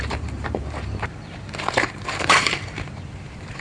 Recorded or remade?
remade